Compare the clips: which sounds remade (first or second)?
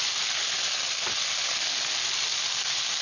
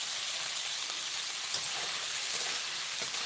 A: second